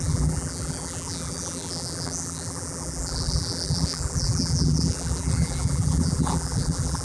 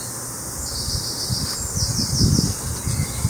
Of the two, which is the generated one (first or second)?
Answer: first